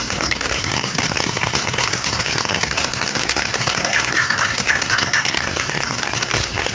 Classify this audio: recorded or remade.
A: remade